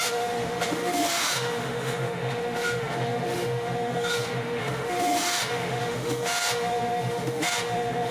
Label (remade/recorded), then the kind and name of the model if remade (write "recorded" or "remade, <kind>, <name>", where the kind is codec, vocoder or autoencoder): remade, autoencoder, DAC-VAE